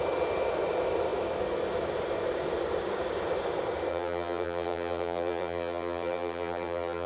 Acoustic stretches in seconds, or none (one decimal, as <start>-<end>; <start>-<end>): 0.0-3.9